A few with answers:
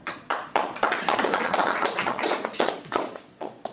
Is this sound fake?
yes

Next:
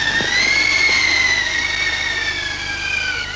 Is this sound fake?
no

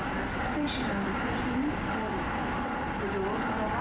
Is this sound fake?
no